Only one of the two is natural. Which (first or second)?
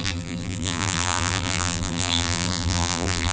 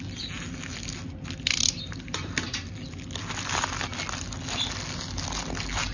second